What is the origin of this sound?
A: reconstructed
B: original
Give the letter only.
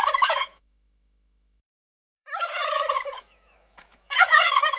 A